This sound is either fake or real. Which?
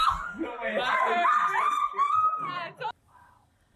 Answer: real